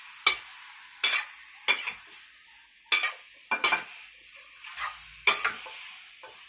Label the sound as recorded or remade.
recorded